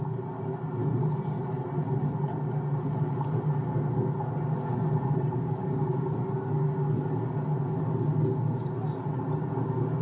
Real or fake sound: real